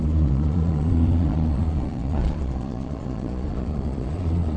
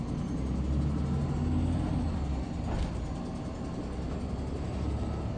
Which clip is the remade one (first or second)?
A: first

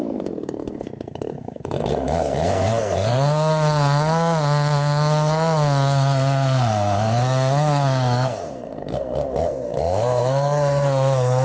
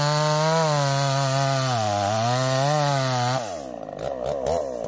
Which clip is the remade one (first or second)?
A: first